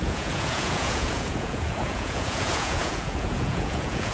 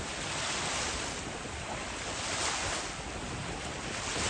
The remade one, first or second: first